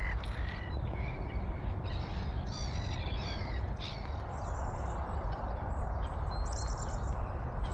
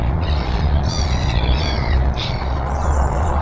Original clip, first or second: first